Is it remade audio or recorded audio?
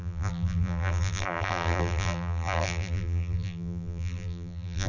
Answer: remade